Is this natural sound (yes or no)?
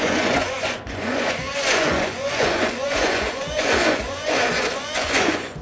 no